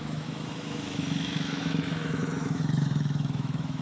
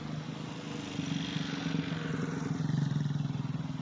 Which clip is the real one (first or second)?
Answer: second